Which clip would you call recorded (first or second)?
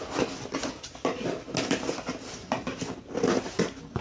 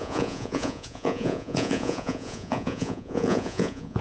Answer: first